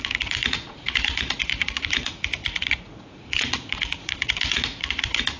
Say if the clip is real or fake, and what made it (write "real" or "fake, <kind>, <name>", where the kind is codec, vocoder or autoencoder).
fake, vocoder, Vocos